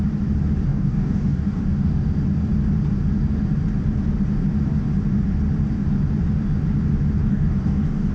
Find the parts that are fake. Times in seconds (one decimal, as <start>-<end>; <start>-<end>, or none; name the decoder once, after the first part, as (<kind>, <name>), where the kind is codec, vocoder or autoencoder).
0.7-1.9 (codec, DAC); 7.2-8.1